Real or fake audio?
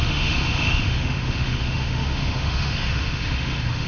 fake